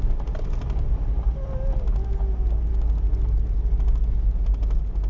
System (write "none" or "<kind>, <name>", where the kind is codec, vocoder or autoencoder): none